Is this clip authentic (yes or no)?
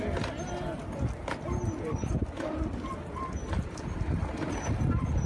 yes